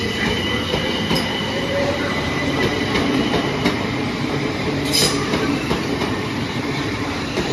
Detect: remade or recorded remade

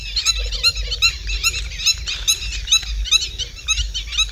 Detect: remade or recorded recorded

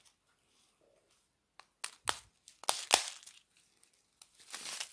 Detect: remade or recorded recorded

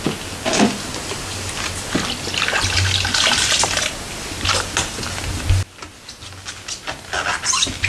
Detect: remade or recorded recorded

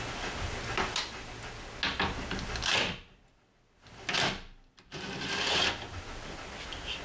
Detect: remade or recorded recorded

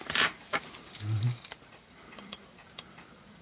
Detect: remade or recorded remade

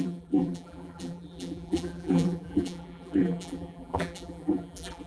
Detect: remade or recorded remade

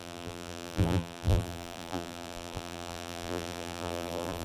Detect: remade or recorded remade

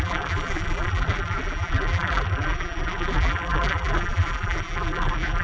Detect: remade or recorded remade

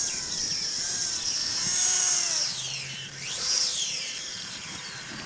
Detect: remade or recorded remade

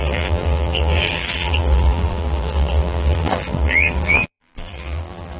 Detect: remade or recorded remade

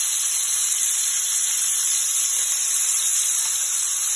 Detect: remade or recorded remade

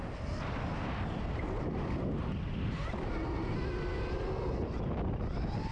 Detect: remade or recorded recorded